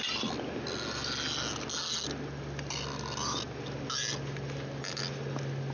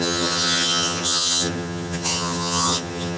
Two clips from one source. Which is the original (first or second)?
first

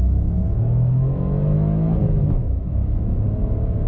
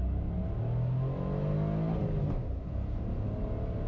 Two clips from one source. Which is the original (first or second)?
second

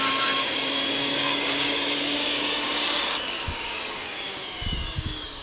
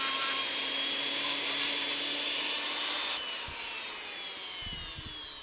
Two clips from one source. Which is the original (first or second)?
second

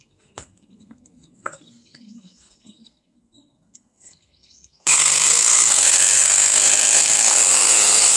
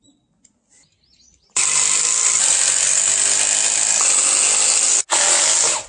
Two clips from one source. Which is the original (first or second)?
second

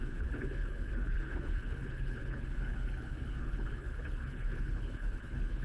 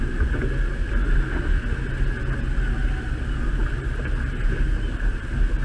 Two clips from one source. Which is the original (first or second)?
second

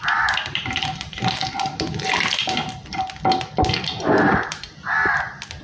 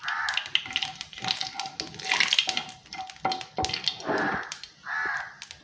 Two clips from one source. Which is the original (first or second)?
second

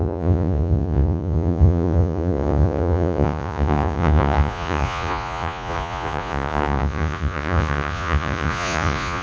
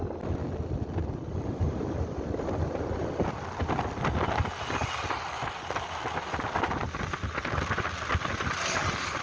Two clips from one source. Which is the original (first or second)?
second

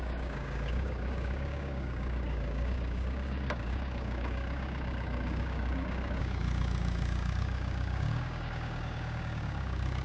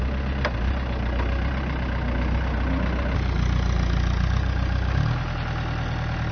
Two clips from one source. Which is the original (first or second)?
second